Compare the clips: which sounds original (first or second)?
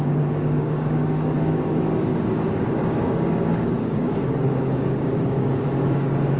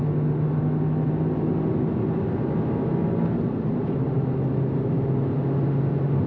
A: second